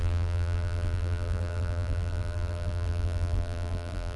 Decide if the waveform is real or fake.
fake